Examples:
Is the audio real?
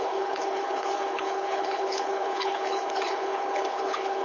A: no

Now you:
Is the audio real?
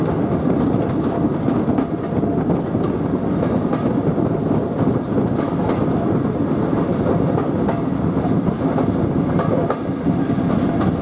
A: yes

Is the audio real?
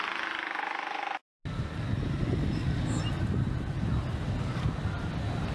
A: yes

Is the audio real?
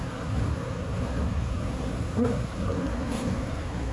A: no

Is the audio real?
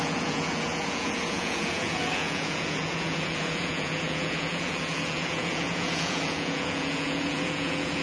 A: no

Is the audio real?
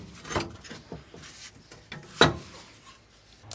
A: yes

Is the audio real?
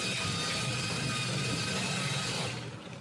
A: yes